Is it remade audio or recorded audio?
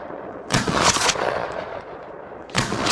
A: remade